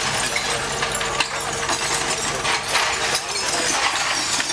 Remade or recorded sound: recorded